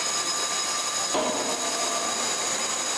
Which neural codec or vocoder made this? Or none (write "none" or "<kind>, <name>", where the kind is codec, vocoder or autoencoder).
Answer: none